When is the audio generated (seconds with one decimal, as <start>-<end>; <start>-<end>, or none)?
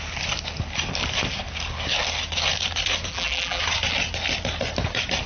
3.1-3.6